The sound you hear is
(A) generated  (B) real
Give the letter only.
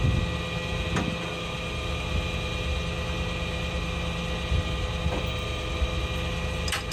B